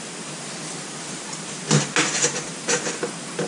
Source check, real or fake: real